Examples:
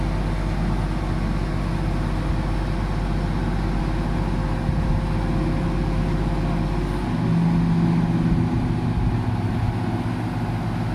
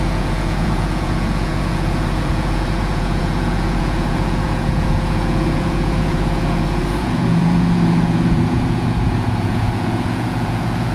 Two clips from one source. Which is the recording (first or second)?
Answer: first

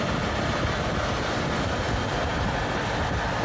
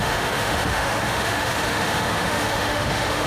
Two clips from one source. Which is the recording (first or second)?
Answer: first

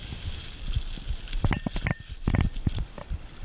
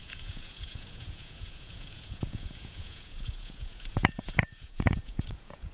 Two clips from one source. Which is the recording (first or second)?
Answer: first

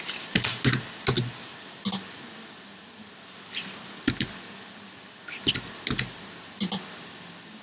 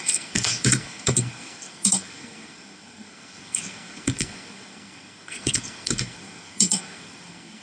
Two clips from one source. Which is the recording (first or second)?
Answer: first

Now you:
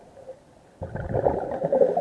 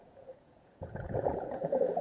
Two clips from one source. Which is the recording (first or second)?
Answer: first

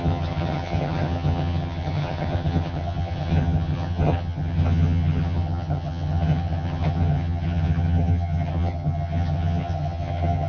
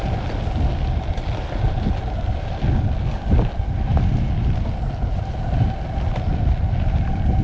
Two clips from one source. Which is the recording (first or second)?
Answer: second